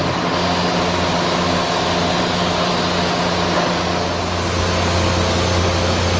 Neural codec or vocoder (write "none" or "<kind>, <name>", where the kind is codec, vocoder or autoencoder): none